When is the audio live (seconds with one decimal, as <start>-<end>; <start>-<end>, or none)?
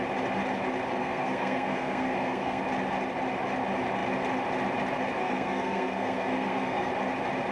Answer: 0.0-1.0; 2.6-5.2; 6.9-7.5